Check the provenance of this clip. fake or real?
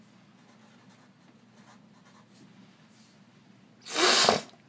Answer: real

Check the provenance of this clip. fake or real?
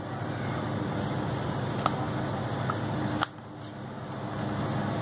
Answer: real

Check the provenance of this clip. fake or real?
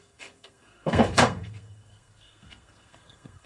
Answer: fake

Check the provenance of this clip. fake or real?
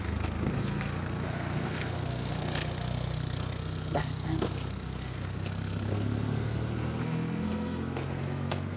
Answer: fake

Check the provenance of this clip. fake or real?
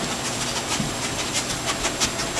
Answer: real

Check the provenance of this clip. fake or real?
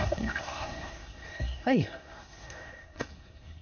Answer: fake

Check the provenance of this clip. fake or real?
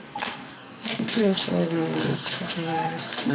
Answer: fake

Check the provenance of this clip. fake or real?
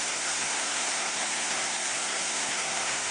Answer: fake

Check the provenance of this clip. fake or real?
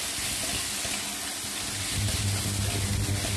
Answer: real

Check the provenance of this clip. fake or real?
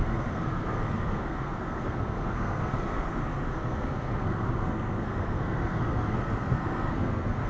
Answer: fake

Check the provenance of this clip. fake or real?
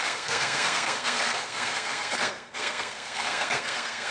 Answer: fake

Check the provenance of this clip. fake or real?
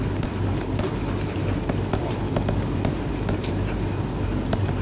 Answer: real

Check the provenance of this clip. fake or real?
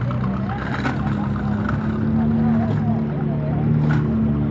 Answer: real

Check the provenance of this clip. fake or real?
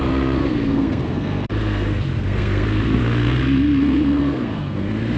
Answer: fake